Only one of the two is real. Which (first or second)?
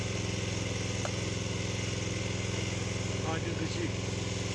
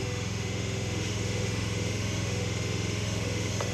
first